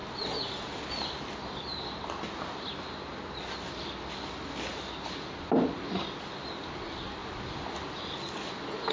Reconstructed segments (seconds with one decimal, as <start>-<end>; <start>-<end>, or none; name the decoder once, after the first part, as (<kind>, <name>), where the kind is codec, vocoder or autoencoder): none

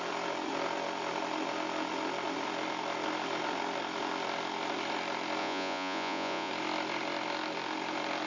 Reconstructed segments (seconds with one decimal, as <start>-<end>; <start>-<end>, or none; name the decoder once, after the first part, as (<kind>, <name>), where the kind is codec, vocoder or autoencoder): 5.4-6.5 (vocoder, Vocos)